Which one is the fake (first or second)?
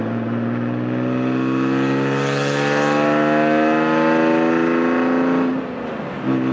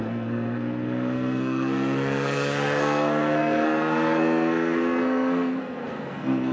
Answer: second